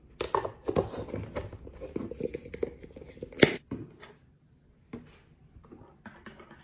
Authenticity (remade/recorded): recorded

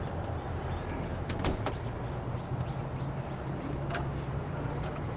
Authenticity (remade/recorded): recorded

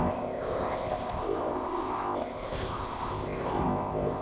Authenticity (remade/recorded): remade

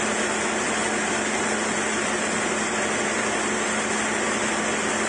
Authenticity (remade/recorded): recorded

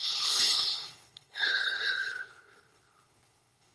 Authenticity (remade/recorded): remade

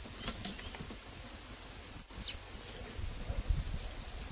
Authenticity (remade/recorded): recorded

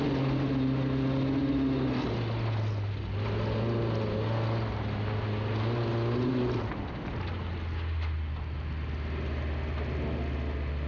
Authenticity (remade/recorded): recorded